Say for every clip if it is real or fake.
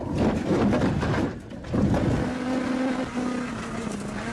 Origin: real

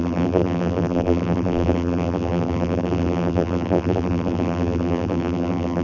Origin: fake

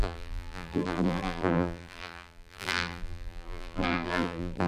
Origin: fake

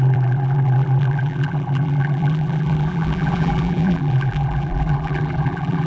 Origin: fake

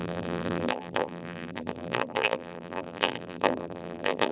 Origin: fake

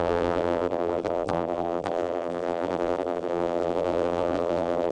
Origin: fake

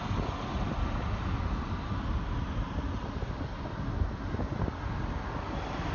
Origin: real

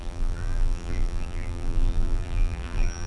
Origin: fake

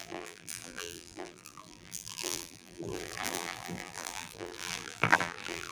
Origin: fake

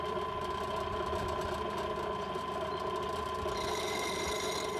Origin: real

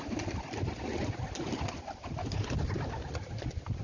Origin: fake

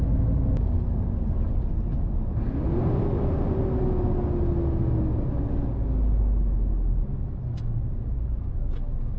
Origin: real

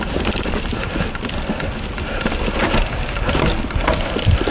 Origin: real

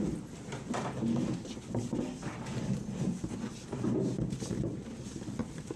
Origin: real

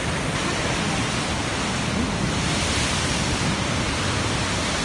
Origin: real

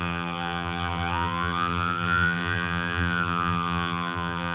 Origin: fake